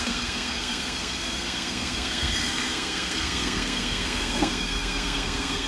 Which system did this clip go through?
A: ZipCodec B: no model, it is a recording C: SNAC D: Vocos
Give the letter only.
C